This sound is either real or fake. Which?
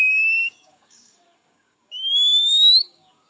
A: fake